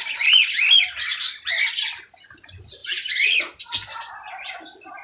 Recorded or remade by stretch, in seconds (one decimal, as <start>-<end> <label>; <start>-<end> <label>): 0.0-5.0 recorded